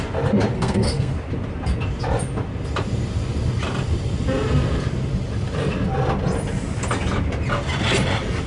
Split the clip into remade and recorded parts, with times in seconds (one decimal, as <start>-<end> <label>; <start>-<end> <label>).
0.0-0.5 recorded; 0.5-1.1 remade; 1.1-8.5 recorded